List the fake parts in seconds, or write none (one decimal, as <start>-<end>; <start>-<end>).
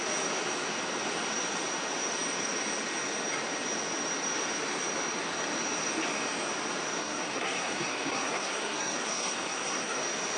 7.0-10.0